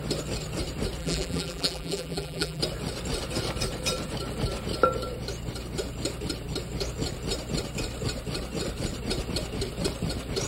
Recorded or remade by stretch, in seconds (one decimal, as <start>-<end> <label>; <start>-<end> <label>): 0.0-1.0 recorded; 1.0-2.6 remade; 2.6-10.5 recorded